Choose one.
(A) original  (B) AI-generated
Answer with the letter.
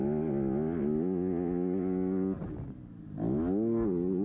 A